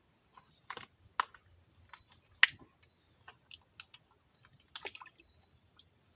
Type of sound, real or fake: real